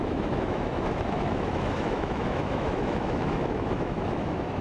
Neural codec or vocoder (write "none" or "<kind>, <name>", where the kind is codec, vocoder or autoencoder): autoencoder, DAC-VAE